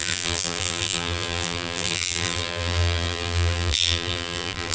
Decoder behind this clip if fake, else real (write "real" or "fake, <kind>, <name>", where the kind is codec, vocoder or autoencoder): fake, vocoder, BigVGAN v2